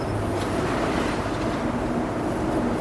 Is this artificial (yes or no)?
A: no